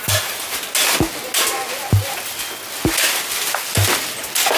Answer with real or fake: real